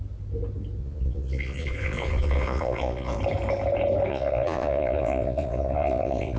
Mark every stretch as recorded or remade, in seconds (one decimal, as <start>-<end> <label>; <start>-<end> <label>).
0.0-0.8 recorded; 0.8-3.2 remade; 3.2-4.1 recorded; 4.1-6.4 remade